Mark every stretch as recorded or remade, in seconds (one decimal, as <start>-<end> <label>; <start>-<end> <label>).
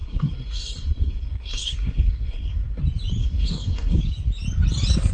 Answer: 0.0-2.8 remade; 2.8-3.2 recorded; 3.2-4.0 remade; 4.0-5.1 recorded